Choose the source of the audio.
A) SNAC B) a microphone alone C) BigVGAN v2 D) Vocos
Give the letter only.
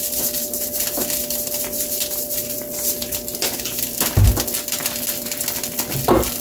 B